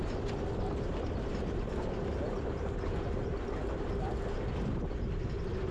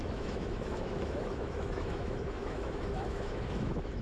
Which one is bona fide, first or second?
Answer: first